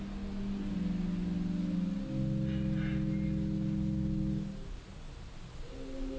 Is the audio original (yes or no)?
yes